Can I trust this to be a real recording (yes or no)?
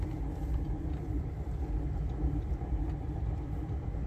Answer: no